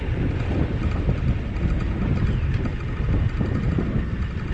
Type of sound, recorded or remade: recorded